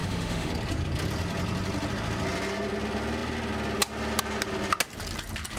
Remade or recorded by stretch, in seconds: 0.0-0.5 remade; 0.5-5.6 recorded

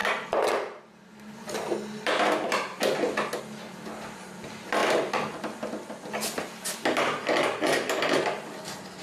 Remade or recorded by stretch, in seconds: 0.0-9.0 recorded

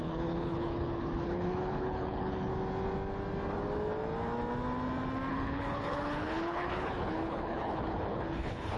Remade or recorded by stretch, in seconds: 0.0-2.5 remade; 2.5-5.3 recorded; 5.3-8.8 remade

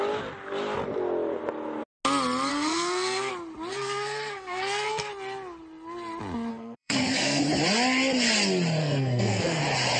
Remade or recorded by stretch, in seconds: 0.0-2.5 recorded; 2.5-3.3 remade; 3.3-3.7 recorded; 3.7-5.1 remade; 5.1-6.5 recorded; 6.5-7.4 remade; 7.4-8.8 recorded; 8.8-9.6 remade; 9.6-10.0 recorded

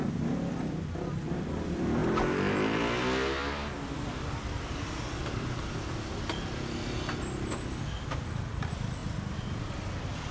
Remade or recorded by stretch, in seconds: 0.0-10.3 recorded

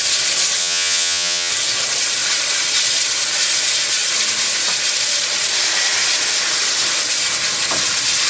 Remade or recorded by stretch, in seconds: 0.0-0.6 recorded; 0.6-1.5 remade; 1.5-8.3 recorded

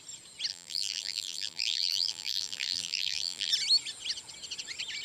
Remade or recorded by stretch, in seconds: 0.0-0.5 recorded; 0.5-3.5 remade; 3.5-5.0 recorded